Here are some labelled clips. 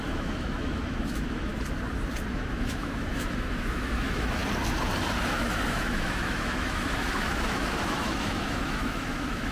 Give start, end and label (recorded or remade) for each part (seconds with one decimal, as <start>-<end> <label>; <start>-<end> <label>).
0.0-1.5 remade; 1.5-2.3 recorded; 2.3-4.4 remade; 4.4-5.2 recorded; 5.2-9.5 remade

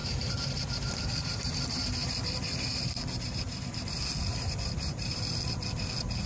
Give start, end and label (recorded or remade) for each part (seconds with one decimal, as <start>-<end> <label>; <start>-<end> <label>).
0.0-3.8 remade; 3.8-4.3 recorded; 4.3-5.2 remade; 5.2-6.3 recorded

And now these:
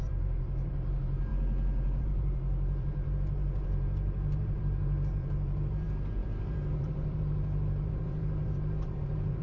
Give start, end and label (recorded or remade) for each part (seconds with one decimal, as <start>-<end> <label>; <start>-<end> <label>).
0.0-1.3 remade; 1.3-2.0 recorded; 2.0-9.4 remade

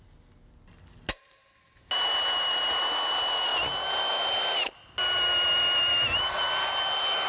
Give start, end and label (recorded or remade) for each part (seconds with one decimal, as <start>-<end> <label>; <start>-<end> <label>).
0.0-7.3 recorded

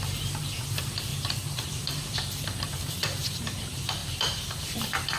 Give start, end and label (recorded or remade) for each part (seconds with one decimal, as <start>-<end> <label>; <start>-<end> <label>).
0.0-5.2 remade